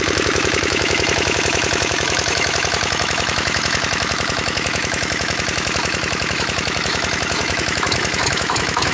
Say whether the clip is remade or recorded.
remade